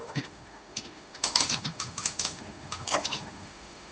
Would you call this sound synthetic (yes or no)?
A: yes